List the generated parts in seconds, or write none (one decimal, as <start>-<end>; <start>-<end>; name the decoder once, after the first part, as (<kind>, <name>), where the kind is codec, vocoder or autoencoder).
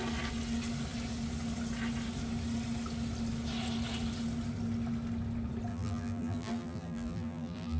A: 5.7-7.8 (vocoder, BigVGAN v2)